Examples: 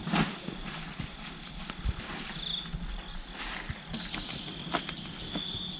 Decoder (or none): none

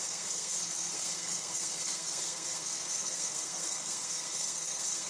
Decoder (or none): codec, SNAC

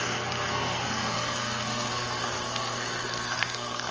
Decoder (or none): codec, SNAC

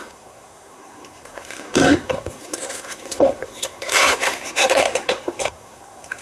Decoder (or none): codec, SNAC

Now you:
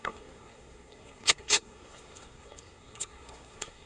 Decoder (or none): codec, SNAC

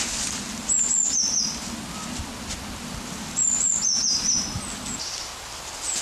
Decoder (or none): none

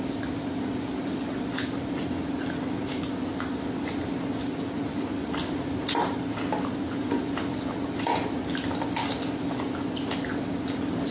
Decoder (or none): none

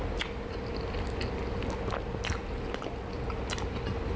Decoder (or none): none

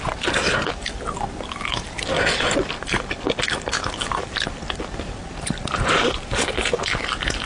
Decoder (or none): none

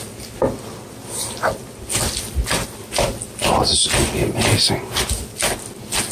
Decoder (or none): none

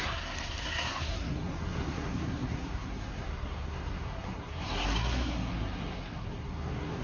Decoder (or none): codec, SNAC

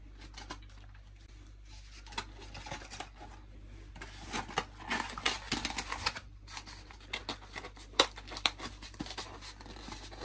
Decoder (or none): none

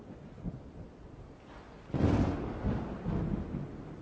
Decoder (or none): none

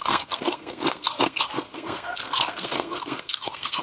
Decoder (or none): codec, SNAC